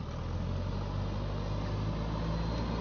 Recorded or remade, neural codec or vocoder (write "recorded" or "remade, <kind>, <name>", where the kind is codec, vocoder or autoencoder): recorded